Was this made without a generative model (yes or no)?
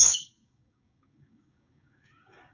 no